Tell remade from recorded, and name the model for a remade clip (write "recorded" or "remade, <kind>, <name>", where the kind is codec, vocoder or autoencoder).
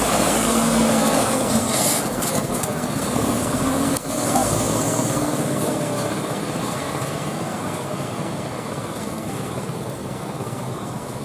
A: remade, codec, SNAC